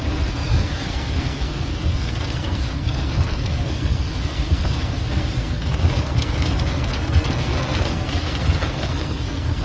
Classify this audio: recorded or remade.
remade